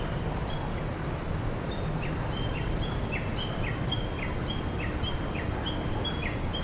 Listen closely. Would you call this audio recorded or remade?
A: recorded